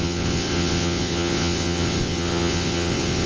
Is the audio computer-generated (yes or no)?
yes